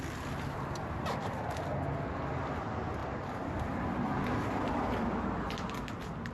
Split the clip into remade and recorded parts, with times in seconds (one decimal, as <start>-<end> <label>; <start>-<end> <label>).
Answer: 0.0-6.3 recorded